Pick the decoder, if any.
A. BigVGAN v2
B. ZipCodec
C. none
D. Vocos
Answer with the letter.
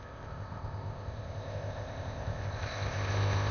B